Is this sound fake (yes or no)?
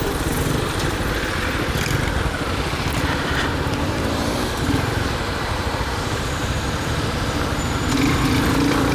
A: yes